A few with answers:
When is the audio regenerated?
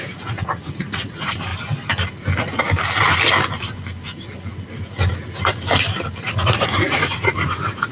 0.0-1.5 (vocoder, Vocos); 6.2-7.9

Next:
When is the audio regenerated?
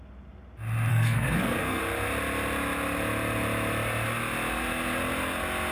0.9-1.8 (codec, SNAC)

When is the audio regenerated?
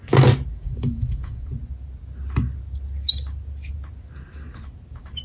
0.5-1.6 (vocoder, Vocos)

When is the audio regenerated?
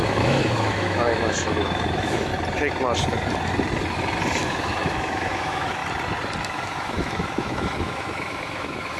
0.0-2.3 (autoencoder, DAC-VAE); 4.4-5.8; 6.4-9.0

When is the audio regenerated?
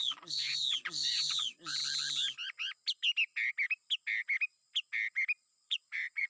0.0-1.8 (vocoder, Vocos); 5.4-6.3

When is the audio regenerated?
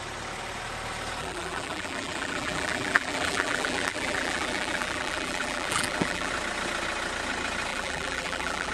1.2-6.3 (vocoder, BigVGAN v2); 7.7-8.7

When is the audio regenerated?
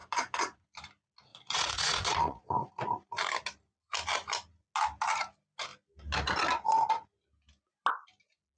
0.0-0.6 (vocoder, Vocos); 1.3-2.7